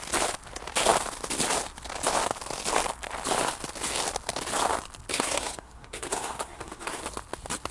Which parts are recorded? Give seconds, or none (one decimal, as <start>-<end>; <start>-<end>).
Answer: 0.0-5.1; 7.0-7.7

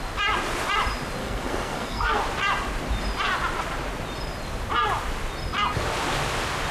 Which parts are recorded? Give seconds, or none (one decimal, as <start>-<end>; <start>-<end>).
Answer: 0.0-1.2; 2.2-6.7

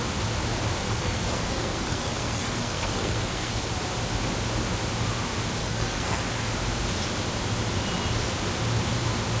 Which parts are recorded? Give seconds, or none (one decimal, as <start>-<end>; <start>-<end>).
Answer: 0.0-0.8; 3.7-5.6; 6.2-9.4